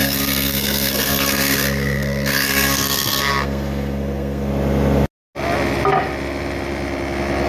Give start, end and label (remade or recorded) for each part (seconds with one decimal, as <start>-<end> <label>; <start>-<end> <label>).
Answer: 0.0-4.5 remade; 4.5-7.5 recorded